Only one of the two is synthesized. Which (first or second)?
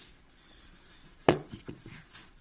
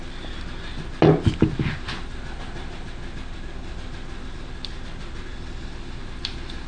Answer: first